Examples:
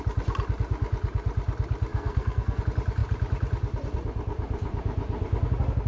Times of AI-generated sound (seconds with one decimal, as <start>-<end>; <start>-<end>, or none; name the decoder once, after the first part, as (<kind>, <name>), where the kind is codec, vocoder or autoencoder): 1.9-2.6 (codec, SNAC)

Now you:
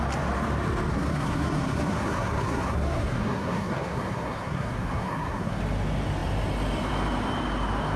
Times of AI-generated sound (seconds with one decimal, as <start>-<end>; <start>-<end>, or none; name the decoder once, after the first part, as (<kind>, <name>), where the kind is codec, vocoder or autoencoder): 0.9-5.6 (codec, SNAC)

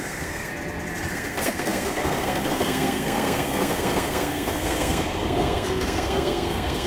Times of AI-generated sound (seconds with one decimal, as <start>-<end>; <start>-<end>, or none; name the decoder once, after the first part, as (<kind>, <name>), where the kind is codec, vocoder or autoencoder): 0.0-0.5 (codec, SNAC); 1.1-6.9

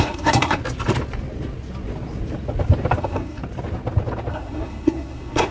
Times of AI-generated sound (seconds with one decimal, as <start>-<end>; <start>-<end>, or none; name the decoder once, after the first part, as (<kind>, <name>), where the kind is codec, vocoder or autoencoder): 0.0-0.6 (codec, SNAC); 3.0-3.4; 4.3-5.5